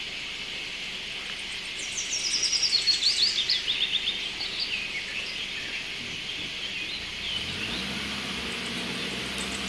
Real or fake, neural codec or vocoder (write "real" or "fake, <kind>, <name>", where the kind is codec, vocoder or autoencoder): real